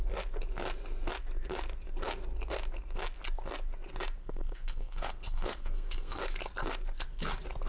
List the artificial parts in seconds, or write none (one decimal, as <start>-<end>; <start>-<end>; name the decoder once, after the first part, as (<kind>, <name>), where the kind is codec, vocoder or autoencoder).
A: 4.2-6.2 (codec, SNAC)